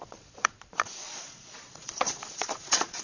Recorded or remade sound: remade